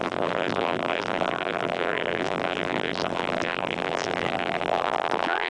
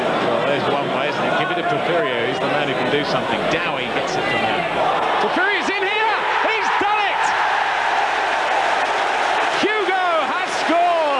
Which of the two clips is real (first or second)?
second